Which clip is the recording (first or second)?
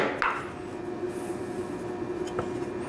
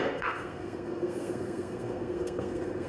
first